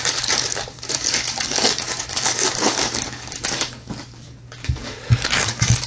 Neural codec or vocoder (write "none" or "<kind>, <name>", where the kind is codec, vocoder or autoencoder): codec, DAC